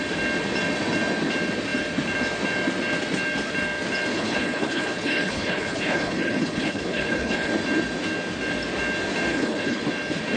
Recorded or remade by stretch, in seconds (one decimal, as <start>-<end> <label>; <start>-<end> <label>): 0.0-4.1 recorded; 4.1-7.5 remade; 7.5-9.3 recorded; 9.3-9.8 remade; 9.8-10.4 recorded